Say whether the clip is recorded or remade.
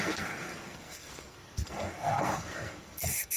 remade